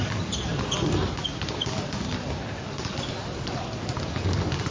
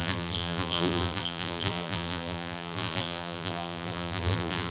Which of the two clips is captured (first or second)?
first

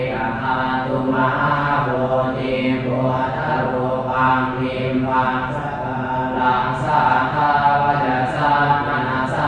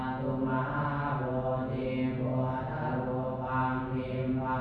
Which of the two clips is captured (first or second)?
second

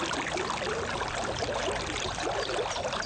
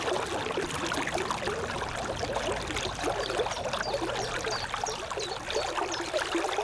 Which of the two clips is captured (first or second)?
second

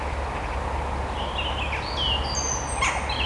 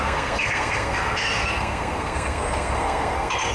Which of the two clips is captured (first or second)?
first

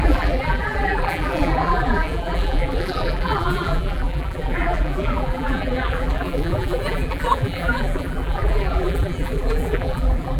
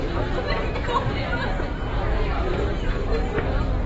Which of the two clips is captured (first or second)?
second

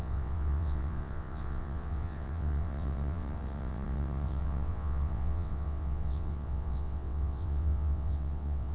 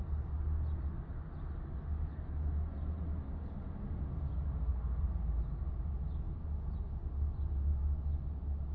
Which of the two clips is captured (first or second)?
second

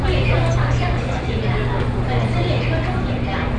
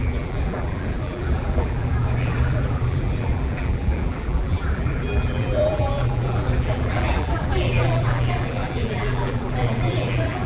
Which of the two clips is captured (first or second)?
first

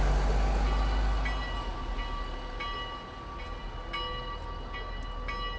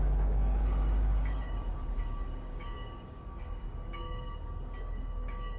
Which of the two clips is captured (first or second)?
first